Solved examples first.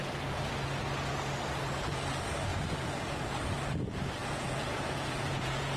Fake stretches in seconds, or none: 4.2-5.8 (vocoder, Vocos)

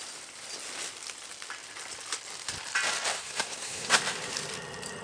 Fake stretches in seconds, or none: 3.1-4.0 (codec, SNAC)

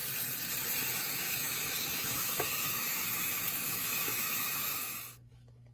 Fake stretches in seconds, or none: 1.0-5.7 (autoencoder, DAC-VAE)